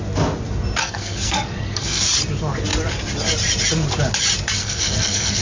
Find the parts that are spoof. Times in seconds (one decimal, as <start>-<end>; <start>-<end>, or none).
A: 0.8-2.0; 4.6-5.4